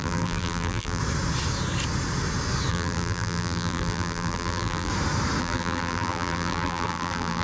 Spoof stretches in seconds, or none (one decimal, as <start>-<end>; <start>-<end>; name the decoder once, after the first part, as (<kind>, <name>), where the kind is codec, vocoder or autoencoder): 0.0-1.0 (vocoder, BigVGAN v2); 2.7-4.9; 5.4-7.4